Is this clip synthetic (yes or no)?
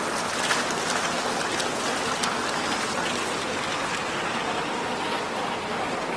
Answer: no